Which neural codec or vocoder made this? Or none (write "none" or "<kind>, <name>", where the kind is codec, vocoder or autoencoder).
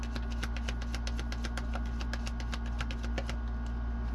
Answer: none